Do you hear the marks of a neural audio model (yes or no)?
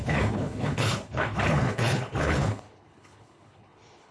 yes